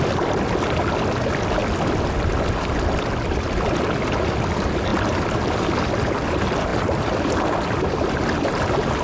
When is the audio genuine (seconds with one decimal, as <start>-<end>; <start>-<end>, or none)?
0.0-9.0